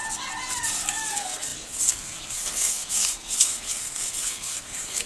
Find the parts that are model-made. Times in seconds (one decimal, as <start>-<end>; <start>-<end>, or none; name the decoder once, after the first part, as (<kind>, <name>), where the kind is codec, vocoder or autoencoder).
1.1-5.1 (codec, SNAC)